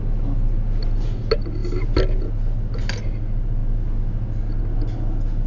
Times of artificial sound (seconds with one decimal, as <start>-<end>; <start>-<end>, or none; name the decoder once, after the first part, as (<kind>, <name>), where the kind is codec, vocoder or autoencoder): none